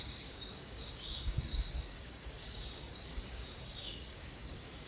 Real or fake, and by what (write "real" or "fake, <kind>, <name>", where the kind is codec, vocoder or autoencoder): fake, codec, DAC